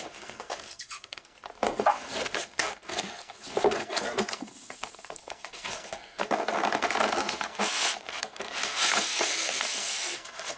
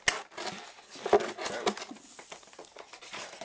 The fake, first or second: first